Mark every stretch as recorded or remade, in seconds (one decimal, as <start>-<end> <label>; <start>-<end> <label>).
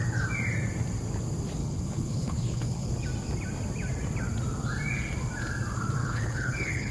0.0-1.6 recorded; 1.6-2.9 remade; 2.9-6.0 recorded; 6.0-6.9 remade